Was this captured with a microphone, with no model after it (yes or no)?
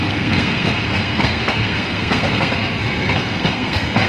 no